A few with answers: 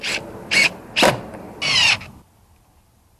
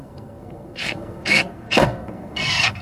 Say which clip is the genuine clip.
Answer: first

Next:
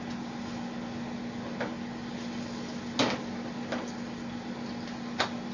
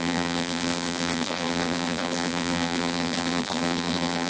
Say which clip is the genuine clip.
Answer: first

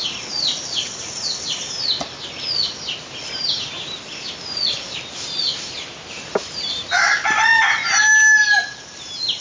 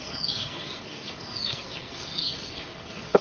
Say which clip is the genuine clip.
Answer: first